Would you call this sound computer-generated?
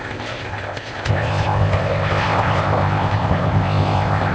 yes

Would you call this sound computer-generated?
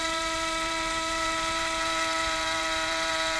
yes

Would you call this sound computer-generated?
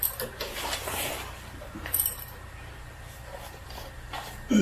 yes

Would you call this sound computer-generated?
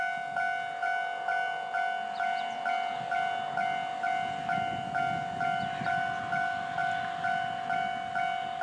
no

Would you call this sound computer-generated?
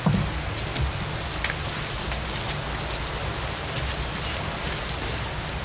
no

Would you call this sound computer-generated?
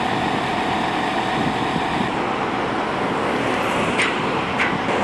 no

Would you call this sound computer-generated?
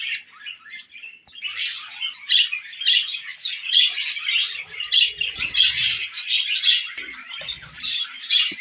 no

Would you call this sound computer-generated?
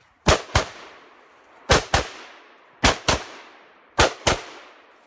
no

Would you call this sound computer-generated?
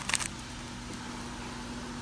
no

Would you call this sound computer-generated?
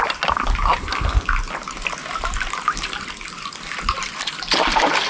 no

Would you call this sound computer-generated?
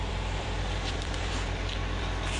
yes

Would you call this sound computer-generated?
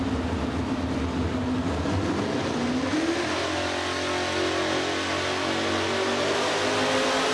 no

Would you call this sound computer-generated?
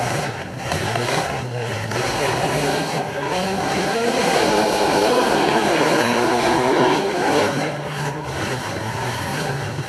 yes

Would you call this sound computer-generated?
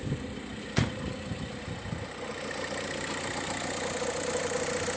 no